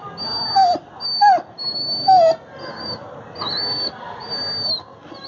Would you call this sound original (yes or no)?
yes